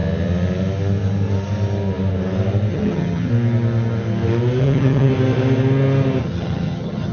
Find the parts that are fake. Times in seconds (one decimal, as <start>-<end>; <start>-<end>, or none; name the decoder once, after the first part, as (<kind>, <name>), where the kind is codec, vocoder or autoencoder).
2.7-3.3 (vocoder, HiFi-GAN); 4.6-5.1; 6.2-7.1

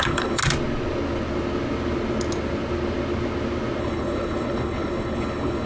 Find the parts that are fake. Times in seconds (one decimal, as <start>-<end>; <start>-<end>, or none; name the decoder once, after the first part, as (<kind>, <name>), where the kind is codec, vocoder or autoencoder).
0.0-0.4 (codec, HILCodec); 3.8-5.7